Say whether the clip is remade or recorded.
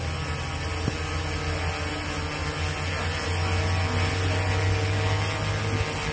recorded